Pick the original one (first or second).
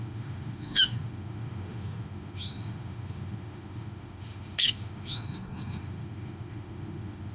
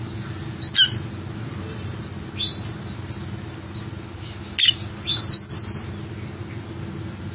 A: second